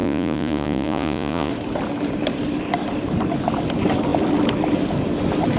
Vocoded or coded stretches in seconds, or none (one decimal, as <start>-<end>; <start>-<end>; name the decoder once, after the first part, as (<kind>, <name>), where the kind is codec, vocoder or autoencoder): 0.0-1.5 (vocoder, Vocos)